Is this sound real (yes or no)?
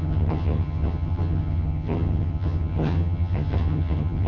no